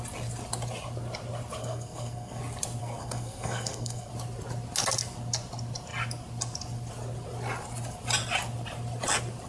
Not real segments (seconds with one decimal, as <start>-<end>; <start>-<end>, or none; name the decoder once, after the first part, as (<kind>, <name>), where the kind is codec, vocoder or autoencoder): 1.6-2.4 (codec, SNAC); 2.8-4.1